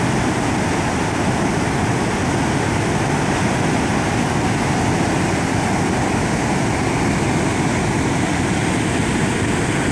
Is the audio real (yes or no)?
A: yes